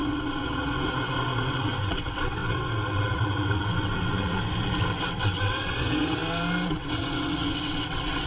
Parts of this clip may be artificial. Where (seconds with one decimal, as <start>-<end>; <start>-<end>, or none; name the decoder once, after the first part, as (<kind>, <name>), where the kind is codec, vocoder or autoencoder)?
0.0-6.2 (vocoder, WaveNeXt); 6.7-8.3